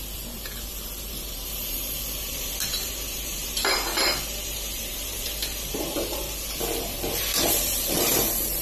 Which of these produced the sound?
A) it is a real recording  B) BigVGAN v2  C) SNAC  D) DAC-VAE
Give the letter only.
B